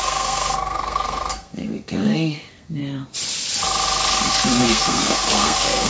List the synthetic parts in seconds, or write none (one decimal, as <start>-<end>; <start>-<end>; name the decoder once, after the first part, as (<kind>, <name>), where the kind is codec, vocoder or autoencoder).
0.0-2.8 (codec, SNAC); 4.3-5.9